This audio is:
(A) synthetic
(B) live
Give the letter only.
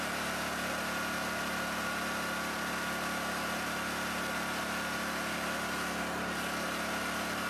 B